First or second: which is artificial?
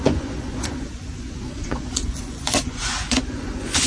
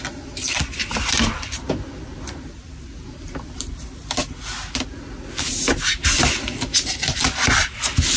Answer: first